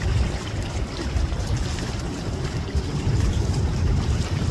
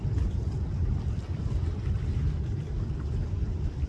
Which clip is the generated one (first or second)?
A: first